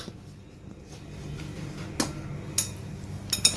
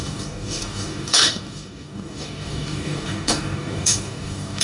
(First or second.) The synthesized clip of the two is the second